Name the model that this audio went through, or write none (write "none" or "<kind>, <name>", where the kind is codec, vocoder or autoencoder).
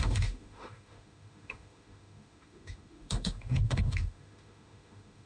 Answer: autoencoder, DAC-VAE